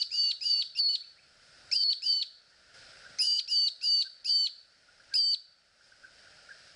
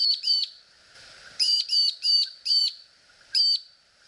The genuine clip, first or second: first